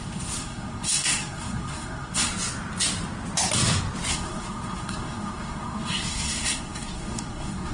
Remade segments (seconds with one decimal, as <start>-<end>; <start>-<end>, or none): 0.0-2.3; 4.1-7.7